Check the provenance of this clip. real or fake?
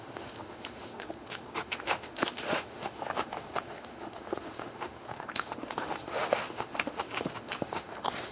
fake